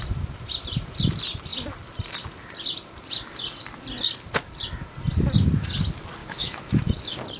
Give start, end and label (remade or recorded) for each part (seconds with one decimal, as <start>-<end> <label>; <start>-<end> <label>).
0.0-6.2 recorded; 6.2-6.9 remade; 6.9-7.4 recorded